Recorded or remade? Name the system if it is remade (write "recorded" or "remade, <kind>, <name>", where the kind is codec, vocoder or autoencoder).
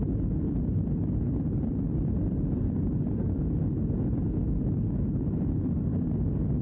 recorded